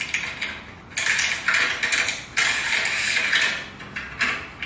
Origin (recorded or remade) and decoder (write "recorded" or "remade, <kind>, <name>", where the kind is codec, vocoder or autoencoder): recorded